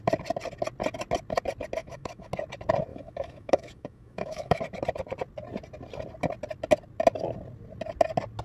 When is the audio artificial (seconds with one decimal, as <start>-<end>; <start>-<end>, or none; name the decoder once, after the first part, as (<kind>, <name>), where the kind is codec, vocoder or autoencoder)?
1.8-2.3 (autoencoder, DAC-VAE); 2.9-4.6